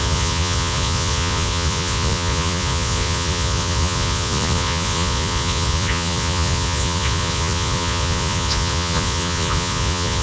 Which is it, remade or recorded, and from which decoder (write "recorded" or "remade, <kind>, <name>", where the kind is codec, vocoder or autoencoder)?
remade, vocoder, Vocos